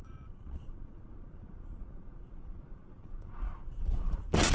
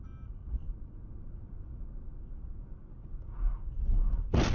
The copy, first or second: first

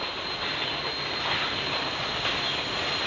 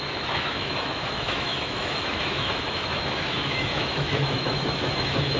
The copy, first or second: second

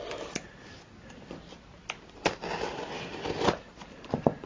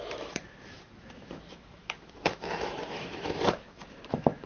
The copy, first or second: second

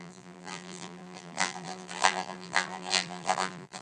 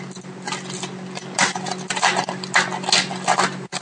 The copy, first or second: first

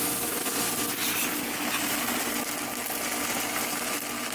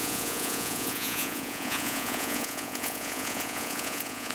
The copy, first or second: second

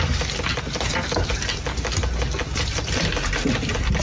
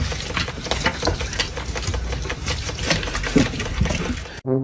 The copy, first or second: second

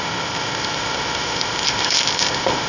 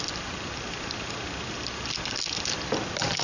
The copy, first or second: first